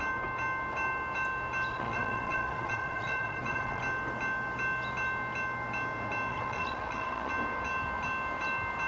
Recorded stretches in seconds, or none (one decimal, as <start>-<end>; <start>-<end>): 0.0-1.7; 3.8-6.3; 7.3-8.9